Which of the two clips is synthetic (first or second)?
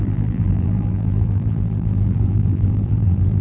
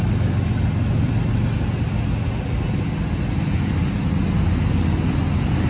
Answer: first